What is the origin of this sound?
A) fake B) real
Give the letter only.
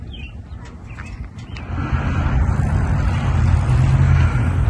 B